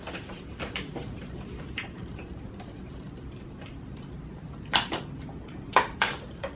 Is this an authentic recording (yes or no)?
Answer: no